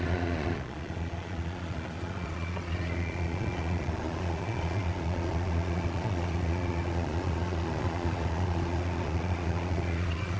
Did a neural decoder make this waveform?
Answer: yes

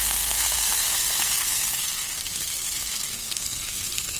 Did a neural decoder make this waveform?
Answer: yes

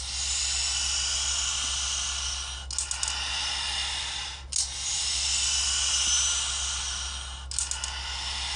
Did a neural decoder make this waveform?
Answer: no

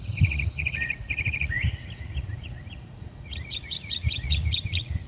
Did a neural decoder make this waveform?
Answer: yes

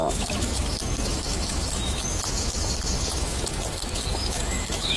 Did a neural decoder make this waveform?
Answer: yes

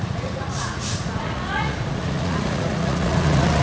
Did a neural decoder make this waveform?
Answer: yes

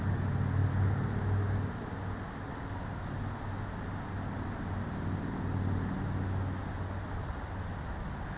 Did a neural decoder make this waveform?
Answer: no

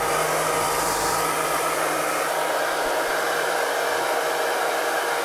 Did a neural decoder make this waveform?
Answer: yes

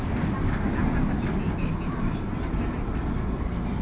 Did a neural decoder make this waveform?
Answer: no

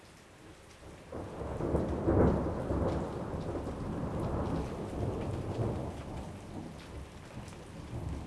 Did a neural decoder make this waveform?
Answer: no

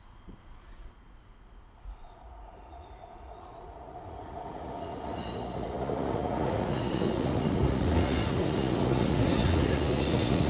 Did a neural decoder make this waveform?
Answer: yes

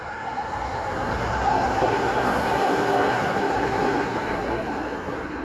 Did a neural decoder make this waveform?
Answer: yes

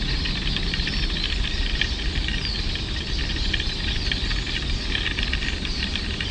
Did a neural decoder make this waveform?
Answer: no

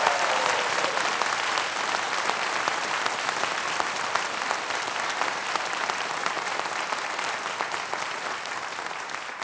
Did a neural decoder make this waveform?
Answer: no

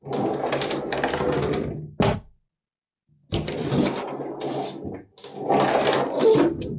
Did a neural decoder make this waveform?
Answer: no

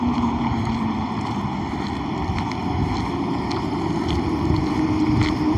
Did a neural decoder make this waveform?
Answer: no